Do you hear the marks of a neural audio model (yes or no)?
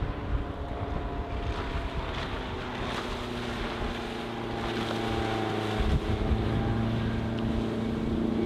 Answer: no